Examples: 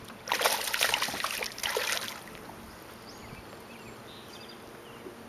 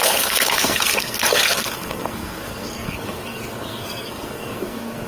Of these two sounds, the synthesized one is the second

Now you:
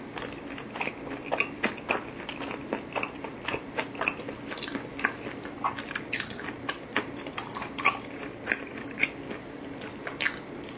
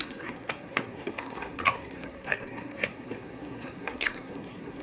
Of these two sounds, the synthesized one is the second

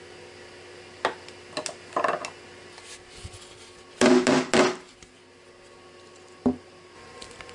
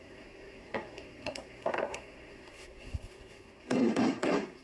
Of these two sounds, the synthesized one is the second